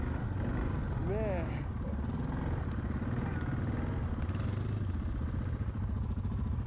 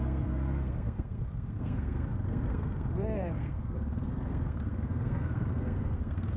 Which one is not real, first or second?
second